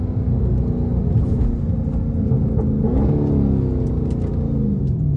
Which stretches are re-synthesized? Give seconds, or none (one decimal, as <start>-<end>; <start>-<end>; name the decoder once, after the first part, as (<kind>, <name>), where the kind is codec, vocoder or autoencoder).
none